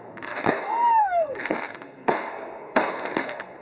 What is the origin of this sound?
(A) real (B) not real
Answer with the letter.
B